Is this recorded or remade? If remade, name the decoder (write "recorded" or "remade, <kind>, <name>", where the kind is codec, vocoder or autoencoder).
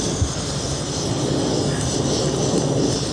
recorded